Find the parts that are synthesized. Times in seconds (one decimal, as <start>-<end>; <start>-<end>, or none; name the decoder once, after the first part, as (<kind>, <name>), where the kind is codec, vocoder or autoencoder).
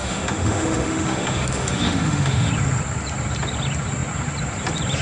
0.0-2.5 (autoencoder, DAC-VAE)